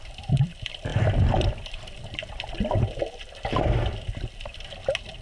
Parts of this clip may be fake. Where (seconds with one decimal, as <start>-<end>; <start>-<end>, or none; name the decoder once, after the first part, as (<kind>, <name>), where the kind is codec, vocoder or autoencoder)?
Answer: 0.0-4.5 (vocoder, BigVGAN v2)